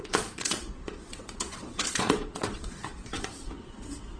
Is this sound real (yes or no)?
no